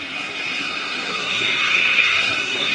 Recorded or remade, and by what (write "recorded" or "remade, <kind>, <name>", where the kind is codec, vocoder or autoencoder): remade, codec, SNAC